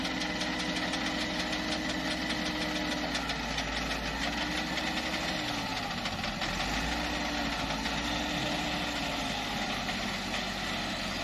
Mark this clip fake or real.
real